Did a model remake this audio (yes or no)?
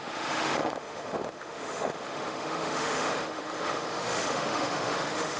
yes